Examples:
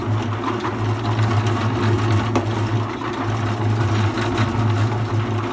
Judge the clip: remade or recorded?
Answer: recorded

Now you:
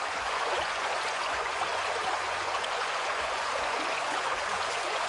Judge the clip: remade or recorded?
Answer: remade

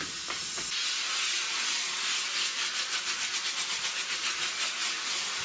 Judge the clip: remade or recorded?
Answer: recorded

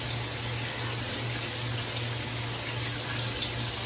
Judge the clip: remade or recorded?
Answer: recorded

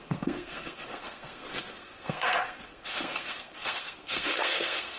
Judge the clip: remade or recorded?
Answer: remade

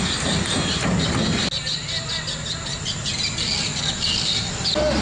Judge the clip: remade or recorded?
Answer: recorded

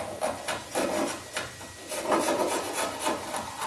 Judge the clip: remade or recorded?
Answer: recorded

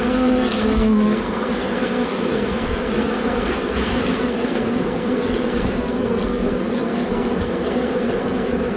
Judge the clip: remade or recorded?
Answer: remade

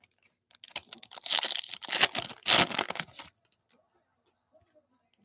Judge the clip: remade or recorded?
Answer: recorded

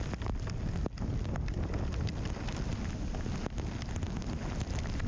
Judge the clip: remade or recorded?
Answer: recorded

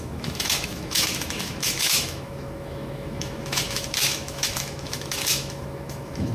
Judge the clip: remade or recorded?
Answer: remade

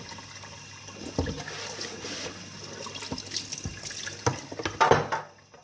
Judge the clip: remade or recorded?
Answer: recorded